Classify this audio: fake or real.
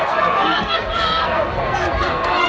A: fake